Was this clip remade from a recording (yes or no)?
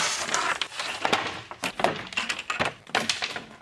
no